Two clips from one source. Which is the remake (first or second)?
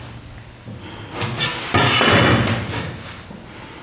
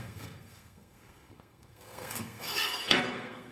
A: second